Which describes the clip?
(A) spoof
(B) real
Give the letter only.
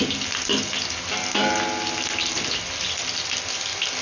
B